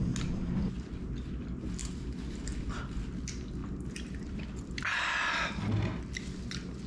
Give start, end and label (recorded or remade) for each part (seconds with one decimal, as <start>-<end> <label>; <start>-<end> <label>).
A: 0.0-1.8 recorded; 1.8-2.8 remade; 2.8-3.6 recorded; 3.6-5.3 remade; 5.3-6.9 recorded